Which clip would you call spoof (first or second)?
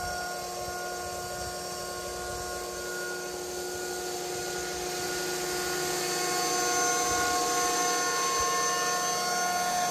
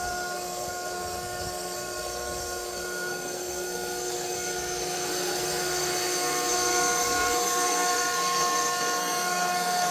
second